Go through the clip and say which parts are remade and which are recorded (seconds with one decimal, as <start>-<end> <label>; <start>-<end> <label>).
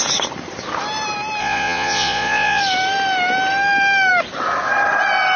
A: 0.0-1.4 recorded; 1.4-2.6 remade; 2.6-5.4 recorded